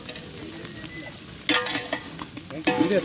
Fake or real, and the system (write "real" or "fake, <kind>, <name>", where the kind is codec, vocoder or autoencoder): real